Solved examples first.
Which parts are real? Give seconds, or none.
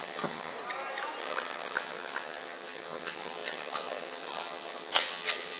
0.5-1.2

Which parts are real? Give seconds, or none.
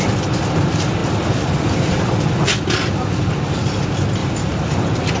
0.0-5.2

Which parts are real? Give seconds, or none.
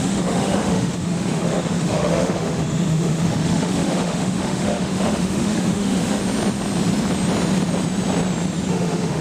6.2-8.7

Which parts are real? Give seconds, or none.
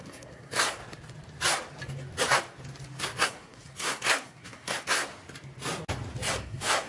0.8-3.0; 5.0-6.3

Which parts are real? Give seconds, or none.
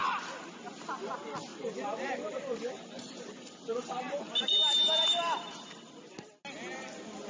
0.6-1.5; 5.9-7.3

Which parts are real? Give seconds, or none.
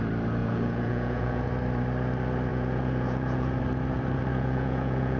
0.0-0.4; 1.5-2.5; 3.6-4.3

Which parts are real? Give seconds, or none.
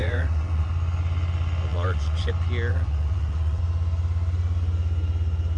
0.7-1.7; 2.3-2.7; 3.6-5.6